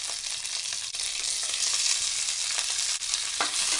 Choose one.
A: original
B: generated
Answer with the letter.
A